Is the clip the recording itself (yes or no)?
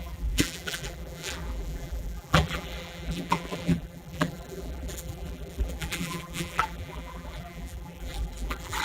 no